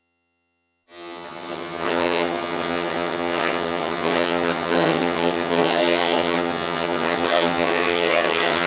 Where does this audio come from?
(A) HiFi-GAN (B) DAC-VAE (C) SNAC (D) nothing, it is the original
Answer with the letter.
A